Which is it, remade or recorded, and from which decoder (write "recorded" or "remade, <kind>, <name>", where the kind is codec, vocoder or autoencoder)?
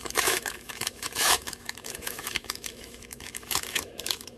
remade, autoencoder, DAC-VAE